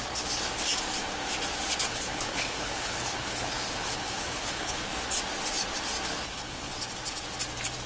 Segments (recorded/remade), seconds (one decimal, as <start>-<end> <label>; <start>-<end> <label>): 0.0-1.9 recorded; 1.9-5.0 remade; 5.0-6.1 recorded; 6.1-6.7 remade; 6.7-7.9 recorded